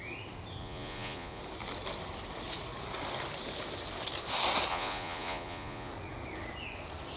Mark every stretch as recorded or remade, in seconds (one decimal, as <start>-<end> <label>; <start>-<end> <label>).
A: 0.0-0.6 recorded; 0.6-1.4 remade; 1.4-4.7 recorded; 4.7-5.9 remade; 5.9-7.2 recorded

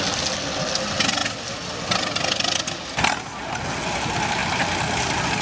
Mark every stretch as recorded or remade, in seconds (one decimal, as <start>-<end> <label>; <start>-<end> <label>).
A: 0.0-5.4 recorded

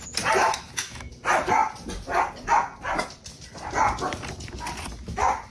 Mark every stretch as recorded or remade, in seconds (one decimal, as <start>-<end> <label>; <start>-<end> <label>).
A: 0.0-0.4 recorded; 0.4-1.1 remade; 1.1-5.5 recorded

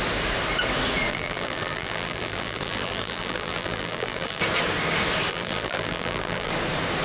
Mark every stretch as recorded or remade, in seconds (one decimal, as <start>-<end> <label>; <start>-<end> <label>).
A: 0.0-1.1 recorded; 1.1-4.4 remade; 4.4-5.3 recorded; 5.3-6.5 remade; 6.5-7.0 recorded

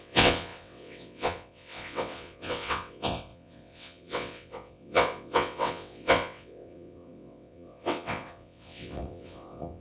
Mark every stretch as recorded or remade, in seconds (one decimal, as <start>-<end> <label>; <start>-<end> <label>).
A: 0.0-9.8 remade

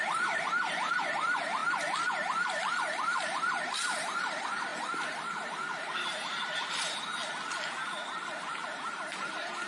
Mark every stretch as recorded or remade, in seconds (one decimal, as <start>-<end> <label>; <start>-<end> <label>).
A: 0.0-1.6 remade; 1.6-2.7 recorded; 2.7-7.2 remade; 7.2-8.1 recorded; 8.1-9.7 remade

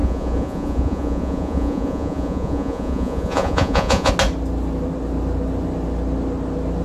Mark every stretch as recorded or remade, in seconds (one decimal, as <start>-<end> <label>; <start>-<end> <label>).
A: 0.0-4.1 remade; 4.1-6.8 recorded